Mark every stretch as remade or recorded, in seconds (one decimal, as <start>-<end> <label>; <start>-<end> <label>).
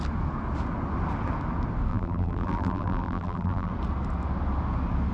0.0-1.9 recorded; 1.9-3.7 remade; 3.7-5.1 recorded